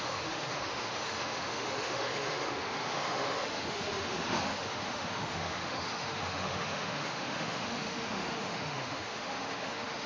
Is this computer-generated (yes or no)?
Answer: yes